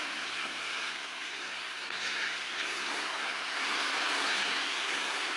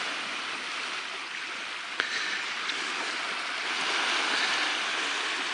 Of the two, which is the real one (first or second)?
second